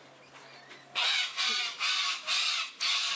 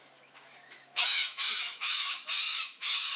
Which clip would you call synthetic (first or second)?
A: second